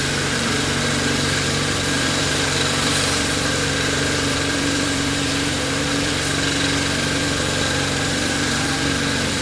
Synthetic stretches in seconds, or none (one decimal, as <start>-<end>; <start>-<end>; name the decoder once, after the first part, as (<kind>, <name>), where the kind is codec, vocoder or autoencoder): 0.0-6.1 (vocoder, BigVGAN v2); 7.2-9.4